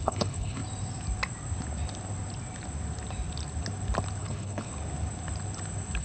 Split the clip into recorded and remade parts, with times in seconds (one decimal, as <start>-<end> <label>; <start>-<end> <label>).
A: 0.0-0.6 remade; 0.6-4.2 recorded; 4.2-4.7 remade; 4.7-6.0 recorded